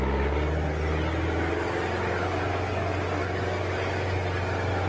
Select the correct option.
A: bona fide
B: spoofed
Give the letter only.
A